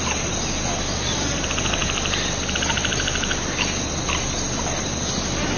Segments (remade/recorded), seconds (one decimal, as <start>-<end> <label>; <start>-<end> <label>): 0.0-5.6 recorded